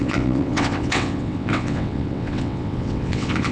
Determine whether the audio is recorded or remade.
remade